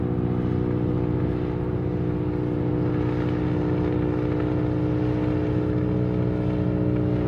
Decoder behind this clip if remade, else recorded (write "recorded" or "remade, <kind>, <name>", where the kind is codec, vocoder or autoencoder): recorded